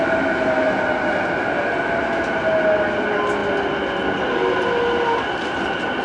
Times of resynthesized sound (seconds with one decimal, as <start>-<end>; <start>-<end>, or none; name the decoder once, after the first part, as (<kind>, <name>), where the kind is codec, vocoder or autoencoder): none

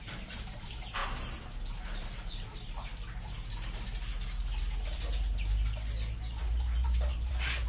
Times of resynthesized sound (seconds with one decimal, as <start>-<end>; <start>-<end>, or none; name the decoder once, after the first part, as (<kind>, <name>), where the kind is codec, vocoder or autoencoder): 0.0-1.0 (vocoder, BigVGAN v2); 1.8-2.9; 6.4-7.7